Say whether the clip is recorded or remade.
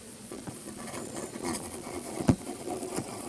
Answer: remade